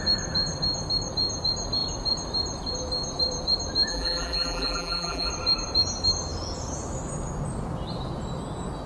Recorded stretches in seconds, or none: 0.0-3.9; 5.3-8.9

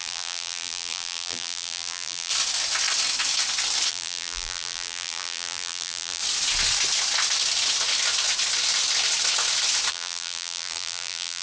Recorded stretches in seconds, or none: 2.3-3.9; 6.2-9.9

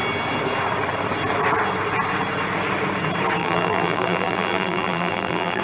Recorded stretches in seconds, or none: 0.0-3.4

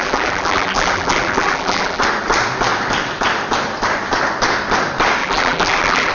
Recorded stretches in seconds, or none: 2.0-5.2

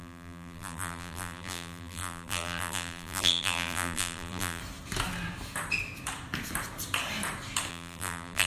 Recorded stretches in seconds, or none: 4.6-7.7

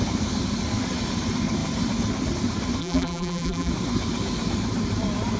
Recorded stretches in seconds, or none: 0.0-2.8; 3.7-5.4

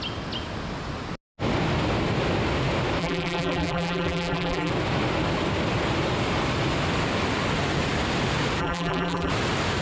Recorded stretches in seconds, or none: 0.0-3.0; 4.7-8.6; 9.3-9.8